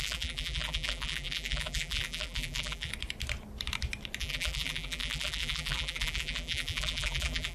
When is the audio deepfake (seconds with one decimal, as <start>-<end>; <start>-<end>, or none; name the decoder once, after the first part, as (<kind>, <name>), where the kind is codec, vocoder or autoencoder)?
0.0-2.9 (vocoder, BigVGAN v2); 4.2-7.5